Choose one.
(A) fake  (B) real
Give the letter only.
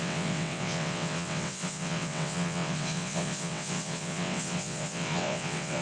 A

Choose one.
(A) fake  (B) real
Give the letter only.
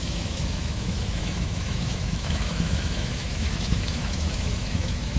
A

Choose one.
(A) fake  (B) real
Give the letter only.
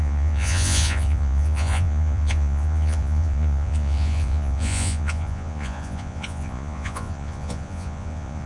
A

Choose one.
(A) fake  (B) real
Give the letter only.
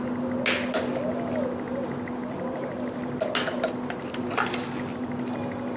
B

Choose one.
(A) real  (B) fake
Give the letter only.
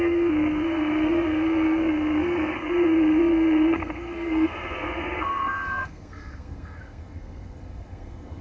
B